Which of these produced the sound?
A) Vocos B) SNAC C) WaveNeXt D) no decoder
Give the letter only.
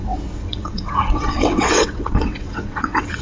C